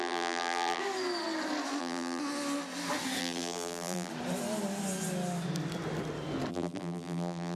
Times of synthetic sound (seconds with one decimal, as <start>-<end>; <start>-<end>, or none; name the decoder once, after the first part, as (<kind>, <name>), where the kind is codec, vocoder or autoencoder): 0.0-0.8 (vocoder, BigVGAN v2); 1.8-2.2; 3.2-4.1; 6.5-7.6